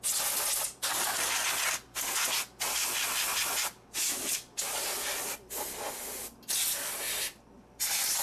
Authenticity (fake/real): real